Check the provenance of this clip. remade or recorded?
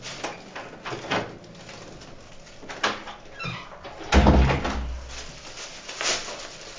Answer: recorded